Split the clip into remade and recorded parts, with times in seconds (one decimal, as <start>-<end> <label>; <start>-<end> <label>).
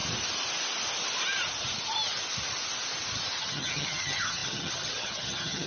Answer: 0.0-3.4 recorded; 3.4-5.7 remade